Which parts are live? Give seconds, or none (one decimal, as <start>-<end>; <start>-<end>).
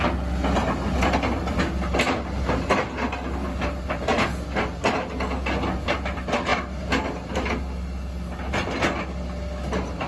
0.0-10.1